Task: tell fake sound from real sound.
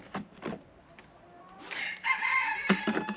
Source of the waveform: real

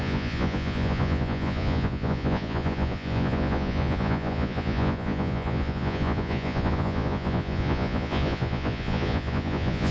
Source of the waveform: fake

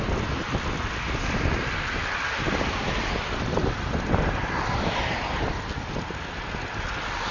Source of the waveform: real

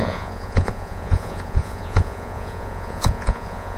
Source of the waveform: fake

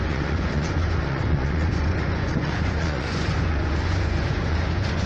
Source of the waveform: fake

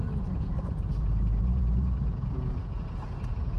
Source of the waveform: fake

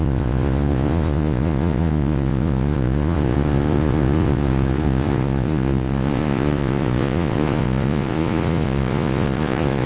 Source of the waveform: fake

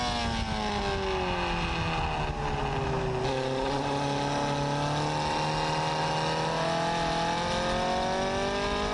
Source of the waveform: real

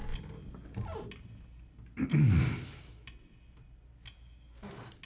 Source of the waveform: real